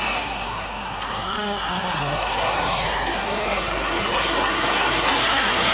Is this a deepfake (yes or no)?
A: yes